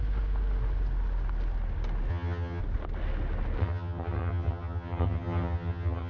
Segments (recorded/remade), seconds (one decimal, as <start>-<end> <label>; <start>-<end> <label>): 0.0-2.1 recorded; 2.1-2.6 remade; 2.6-3.6 recorded; 3.6-6.1 remade